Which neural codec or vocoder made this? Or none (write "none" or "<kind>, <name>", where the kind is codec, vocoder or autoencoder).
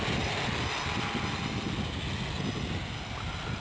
none